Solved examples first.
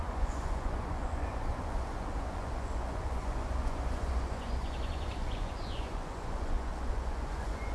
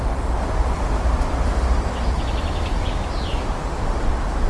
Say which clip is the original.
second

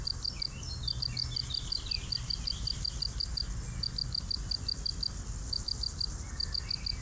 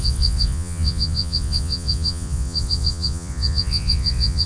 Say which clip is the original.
first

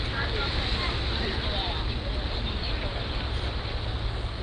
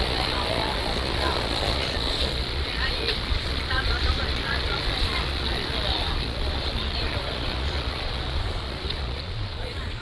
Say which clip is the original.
first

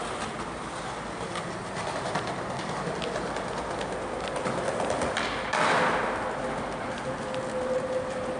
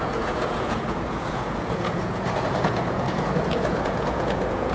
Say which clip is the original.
first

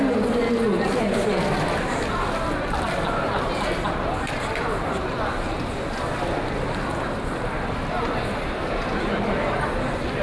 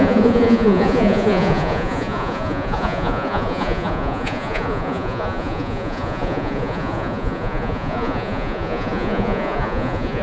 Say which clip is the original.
first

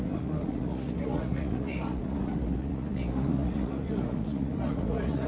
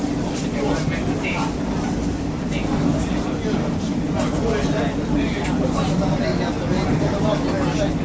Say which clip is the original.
second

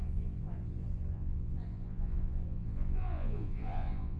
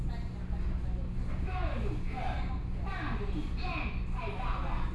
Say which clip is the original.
second